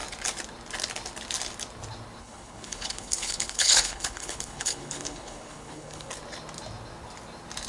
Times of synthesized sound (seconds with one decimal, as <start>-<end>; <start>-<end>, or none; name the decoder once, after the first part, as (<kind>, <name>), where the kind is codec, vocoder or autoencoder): 2.2-6.1 (codec, HILCodec)

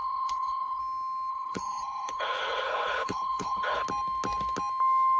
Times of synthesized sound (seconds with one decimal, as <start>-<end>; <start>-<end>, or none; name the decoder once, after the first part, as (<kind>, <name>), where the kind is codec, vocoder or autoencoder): 0.0-0.8 (codec, HILCodec); 1.3-3.8

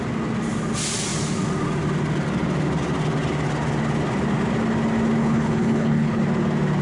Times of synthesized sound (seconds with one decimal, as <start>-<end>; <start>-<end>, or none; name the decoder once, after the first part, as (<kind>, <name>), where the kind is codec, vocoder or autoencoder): 5.2-6.2 (codec, HILCodec)

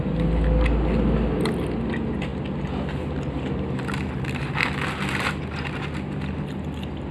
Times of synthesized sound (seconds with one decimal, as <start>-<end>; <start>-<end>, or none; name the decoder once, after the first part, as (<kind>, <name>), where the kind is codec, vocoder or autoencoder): none